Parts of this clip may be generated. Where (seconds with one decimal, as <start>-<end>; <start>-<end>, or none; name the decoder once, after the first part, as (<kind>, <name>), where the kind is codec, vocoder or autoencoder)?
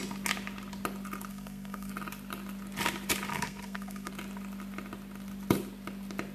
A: 1.3-1.9 (codec, SNAC); 3.3-4.1